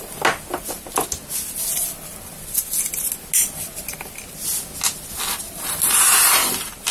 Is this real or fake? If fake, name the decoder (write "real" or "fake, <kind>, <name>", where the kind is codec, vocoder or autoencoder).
real